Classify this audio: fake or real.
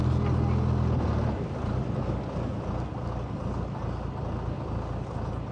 real